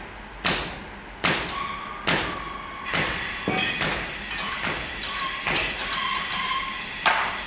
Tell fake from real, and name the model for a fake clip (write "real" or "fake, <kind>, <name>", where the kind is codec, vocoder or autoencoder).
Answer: real